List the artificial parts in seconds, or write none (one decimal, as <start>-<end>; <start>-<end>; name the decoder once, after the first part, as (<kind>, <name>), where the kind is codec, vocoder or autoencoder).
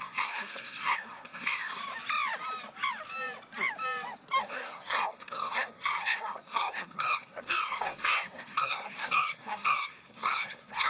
0.0-1.8 (codec, SNAC); 4.4-10.9